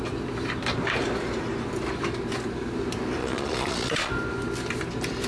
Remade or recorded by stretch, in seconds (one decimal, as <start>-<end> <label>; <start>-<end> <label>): 0.0-3.2 recorded; 3.2-4.1 remade; 4.1-5.3 recorded